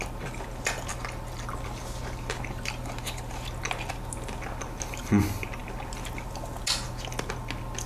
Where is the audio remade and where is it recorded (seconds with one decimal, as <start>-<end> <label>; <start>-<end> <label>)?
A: 0.0-7.9 recorded